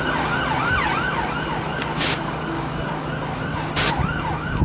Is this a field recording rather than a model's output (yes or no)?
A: yes